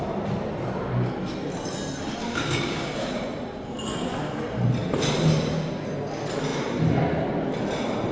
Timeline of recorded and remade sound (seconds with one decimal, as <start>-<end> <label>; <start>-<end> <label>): 0.0-2.2 recorded; 2.2-3.2 remade; 3.2-8.1 recorded